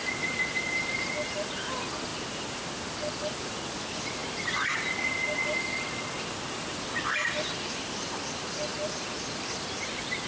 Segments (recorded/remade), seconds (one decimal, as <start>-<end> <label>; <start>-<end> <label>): 0.0-10.3 recorded